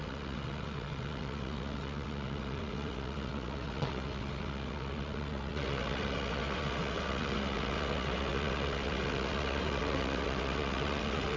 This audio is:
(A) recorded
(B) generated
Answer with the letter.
B